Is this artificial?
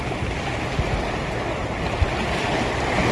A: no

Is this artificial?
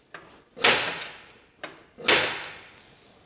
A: no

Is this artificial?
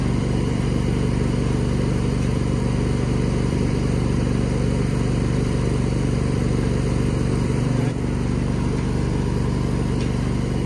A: yes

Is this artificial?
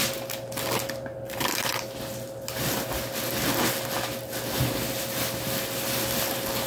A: no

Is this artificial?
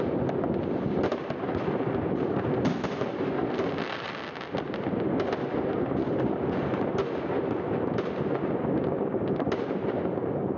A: no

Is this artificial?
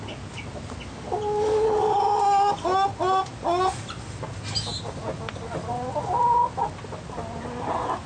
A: no